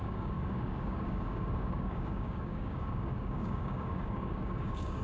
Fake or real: fake